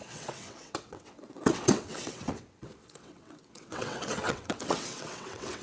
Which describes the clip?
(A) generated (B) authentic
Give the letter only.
A